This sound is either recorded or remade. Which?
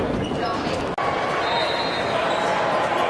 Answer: recorded